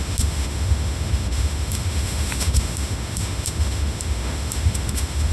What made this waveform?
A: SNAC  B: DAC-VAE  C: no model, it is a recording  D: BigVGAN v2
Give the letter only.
B